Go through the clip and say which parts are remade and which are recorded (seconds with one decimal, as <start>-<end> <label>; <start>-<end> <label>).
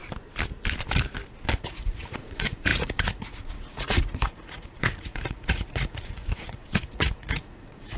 0.0-1.6 recorded; 1.6-8.0 remade